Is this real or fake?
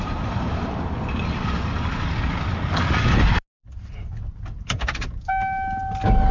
real